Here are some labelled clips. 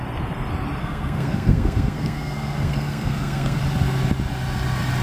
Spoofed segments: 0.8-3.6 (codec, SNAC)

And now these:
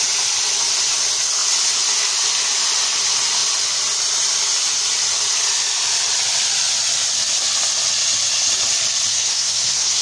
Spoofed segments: 9.1-10.0 (codec, SNAC)

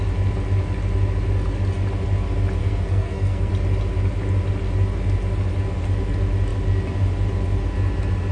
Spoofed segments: 2.6-3.5 (codec, SNAC)